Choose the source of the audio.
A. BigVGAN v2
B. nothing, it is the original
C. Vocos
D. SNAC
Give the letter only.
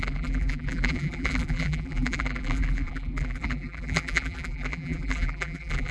A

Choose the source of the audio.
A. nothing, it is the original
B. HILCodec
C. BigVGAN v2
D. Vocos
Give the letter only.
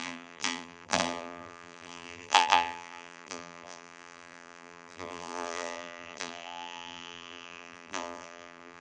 C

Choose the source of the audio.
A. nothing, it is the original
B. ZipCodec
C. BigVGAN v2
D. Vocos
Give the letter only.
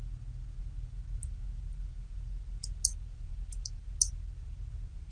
A